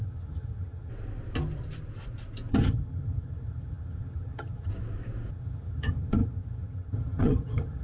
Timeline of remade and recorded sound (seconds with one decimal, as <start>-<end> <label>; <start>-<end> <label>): 0.0-0.9 remade; 0.9-2.5 recorded; 2.5-4.7 remade; 4.7-5.3 recorded; 5.3-7.8 remade